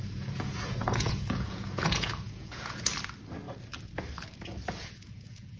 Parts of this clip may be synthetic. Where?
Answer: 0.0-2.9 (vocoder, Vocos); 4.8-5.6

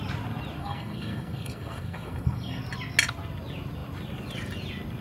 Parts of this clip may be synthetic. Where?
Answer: 0.6-2.6 (codec, SNAC)

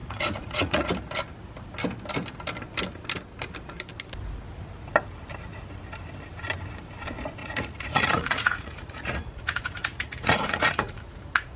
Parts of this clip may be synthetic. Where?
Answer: 0.0-0.9 (vocoder, Vocos); 7.4-11.6